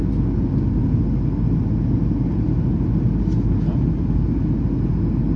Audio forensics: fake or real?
real